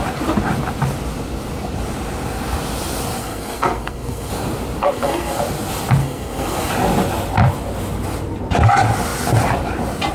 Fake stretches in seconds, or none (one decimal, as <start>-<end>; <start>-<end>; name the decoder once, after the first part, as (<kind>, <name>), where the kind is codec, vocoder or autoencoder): 3.2-4.3 (codec, SNAC); 4.8-5.4; 6.0-6.7